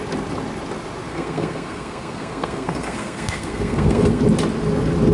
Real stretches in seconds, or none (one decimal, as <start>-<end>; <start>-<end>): 0.0-1.1; 4.2-5.1